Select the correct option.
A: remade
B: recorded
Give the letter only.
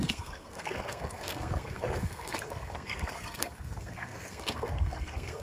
A